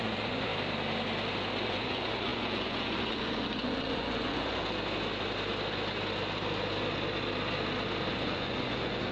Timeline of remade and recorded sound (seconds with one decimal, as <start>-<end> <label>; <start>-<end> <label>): 0.0-0.5 remade; 0.5-1.6 recorded; 1.6-4.6 remade; 4.6-8.1 recorded; 8.1-9.1 remade